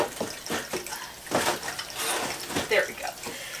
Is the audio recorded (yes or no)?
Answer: yes